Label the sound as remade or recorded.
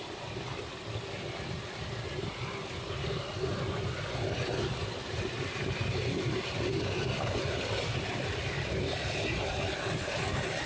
recorded